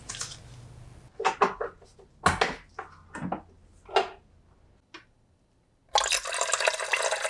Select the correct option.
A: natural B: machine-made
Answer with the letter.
A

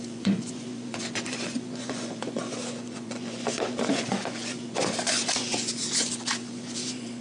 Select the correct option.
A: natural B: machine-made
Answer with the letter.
B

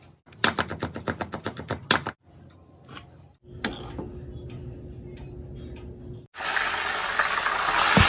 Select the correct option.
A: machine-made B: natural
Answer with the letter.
B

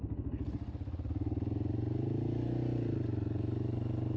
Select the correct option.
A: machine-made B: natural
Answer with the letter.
B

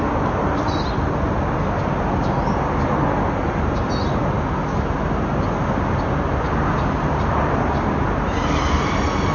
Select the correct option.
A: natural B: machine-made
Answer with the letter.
A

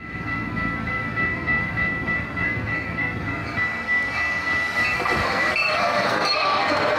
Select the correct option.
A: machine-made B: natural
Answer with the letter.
A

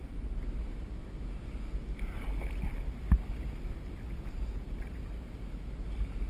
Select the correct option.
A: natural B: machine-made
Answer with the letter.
A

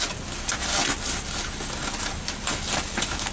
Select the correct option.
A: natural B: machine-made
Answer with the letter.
A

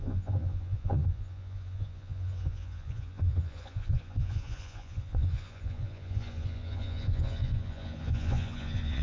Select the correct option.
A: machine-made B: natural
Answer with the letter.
A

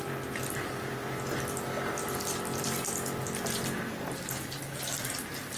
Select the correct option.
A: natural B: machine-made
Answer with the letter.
A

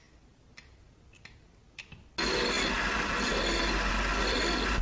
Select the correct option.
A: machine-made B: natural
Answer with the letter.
B